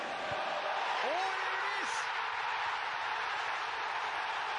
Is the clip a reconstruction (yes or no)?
no